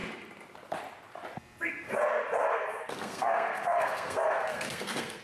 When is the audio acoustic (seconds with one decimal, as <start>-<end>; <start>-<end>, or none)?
0.0-2.4